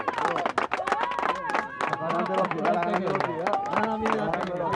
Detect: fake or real real